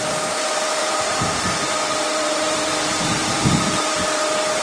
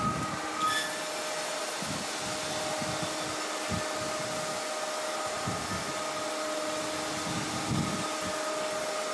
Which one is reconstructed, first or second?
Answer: first